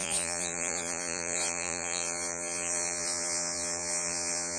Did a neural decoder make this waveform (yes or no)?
yes